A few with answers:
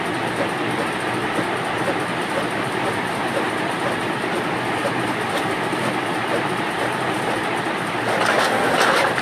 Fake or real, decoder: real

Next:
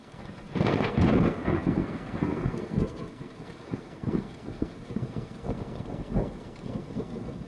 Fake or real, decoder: fake, codec, SNAC